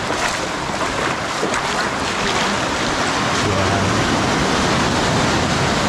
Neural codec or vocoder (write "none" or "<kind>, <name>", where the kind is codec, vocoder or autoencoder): none